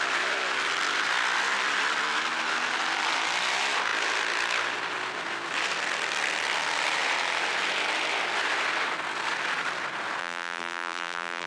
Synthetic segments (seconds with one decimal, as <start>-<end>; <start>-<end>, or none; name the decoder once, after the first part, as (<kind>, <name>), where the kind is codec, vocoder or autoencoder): 10.2-11.5 (vocoder, BigVGAN v2)